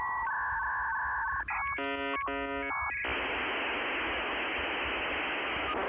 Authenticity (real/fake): real